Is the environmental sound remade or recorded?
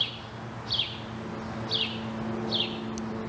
recorded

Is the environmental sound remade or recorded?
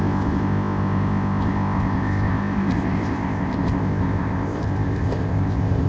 remade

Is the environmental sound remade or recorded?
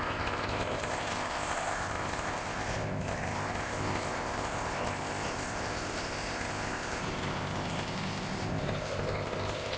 remade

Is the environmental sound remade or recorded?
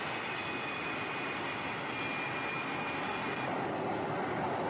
recorded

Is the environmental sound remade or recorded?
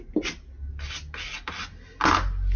recorded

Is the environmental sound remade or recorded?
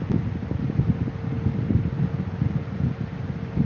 recorded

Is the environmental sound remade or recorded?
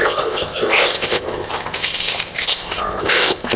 remade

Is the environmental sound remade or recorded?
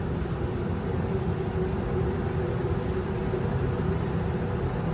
recorded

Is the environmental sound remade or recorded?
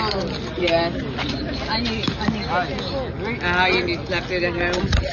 recorded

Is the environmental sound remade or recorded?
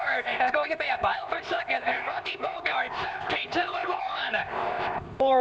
remade